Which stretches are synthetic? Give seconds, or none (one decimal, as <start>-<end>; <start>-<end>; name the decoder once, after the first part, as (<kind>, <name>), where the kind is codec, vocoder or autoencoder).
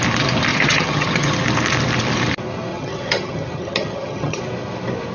0.5-1.3 (vocoder, HiFi-GAN); 2.7-4.4